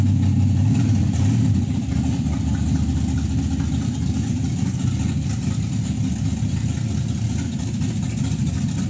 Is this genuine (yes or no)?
yes